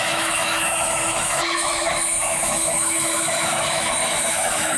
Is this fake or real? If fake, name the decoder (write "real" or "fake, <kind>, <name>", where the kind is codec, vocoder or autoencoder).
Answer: fake, autoencoder, DAC-VAE